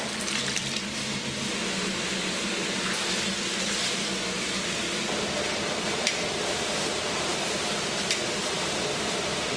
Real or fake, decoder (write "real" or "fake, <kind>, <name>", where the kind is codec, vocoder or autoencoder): fake, vocoder, BigVGAN v2